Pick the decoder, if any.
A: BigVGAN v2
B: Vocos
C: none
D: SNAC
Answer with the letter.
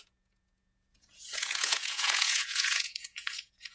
B